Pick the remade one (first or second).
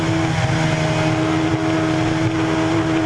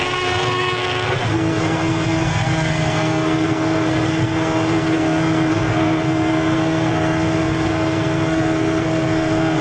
second